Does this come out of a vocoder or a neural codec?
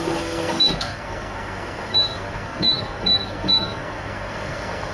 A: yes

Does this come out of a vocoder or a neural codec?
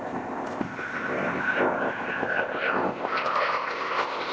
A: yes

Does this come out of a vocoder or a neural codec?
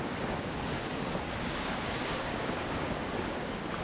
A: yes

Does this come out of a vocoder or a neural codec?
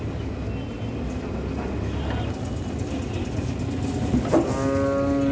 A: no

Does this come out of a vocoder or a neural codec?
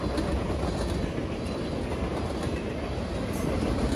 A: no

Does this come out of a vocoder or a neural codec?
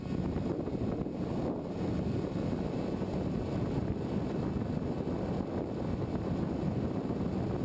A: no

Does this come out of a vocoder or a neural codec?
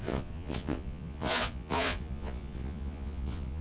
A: yes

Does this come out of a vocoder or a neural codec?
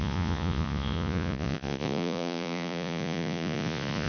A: yes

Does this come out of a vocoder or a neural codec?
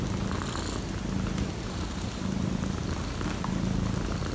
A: no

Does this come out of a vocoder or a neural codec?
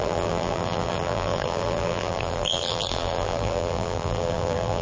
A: yes